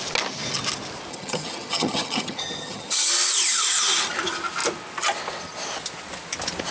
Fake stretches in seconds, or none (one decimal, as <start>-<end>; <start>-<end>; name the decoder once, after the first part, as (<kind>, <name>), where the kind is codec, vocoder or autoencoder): 1.1-3.1 (vocoder, HiFi-GAN)